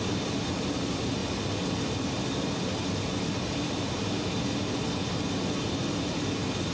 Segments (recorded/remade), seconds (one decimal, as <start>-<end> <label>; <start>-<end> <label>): 0.0-6.7 recorded